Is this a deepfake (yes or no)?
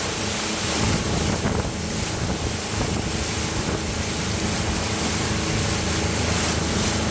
no